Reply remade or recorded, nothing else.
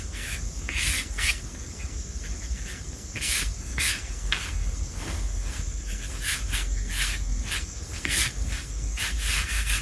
remade